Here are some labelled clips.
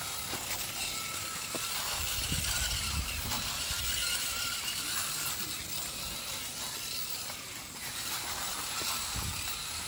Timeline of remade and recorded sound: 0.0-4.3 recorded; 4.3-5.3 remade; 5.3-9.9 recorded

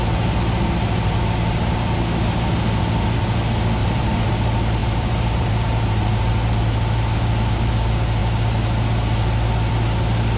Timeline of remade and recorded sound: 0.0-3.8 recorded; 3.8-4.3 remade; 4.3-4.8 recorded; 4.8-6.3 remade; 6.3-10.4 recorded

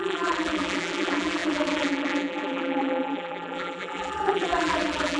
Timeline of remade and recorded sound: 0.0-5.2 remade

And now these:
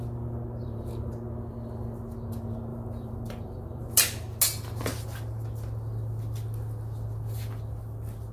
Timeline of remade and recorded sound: 0.0-0.6 recorded; 0.6-1.1 remade; 1.1-2.7 recorded; 2.7-3.9 remade; 3.9-8.3 recorded

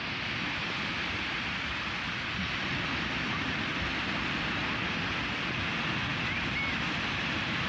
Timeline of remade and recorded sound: 0.0-7.7 recorded

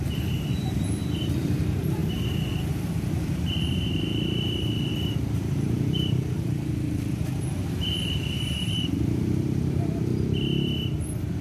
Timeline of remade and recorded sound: 0.0-2.0 remade; 2.0-2.5 recorded; 2.5-10.1 remade; 10.1-11.4 recorded

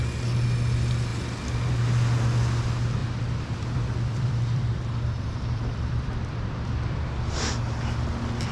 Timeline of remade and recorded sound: 0.0-3.0 recorded; 3.0-7.0 remade; 7.0-8.5 recorded

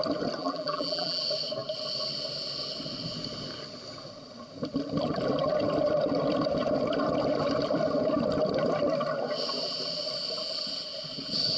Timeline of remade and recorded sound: 0.0-0.4 recorded; 0.4-1.2 remade; 1.2-11.6 recorded